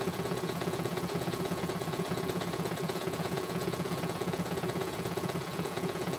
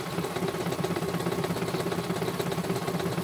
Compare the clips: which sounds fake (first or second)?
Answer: first